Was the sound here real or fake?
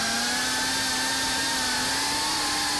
real